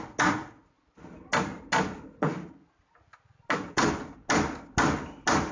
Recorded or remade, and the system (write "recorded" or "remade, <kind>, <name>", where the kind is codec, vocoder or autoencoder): recorded